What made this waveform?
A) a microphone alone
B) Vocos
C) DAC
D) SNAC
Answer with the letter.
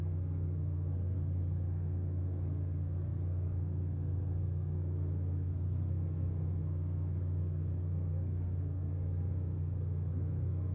D